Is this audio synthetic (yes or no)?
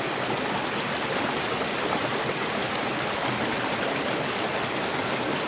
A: no